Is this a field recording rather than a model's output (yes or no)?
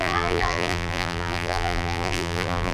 no